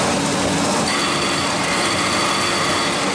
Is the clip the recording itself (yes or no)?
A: yes